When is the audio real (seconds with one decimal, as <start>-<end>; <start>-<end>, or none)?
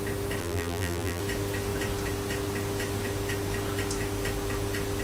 0.0-0.4; 1.2-5.0